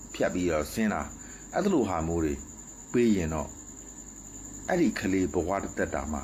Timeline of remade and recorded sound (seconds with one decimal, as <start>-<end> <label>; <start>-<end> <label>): 0.0-2.8 remade; 2.8-4.9 recorded; 4.9-6.2 remade